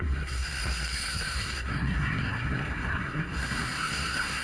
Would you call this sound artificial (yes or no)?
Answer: yes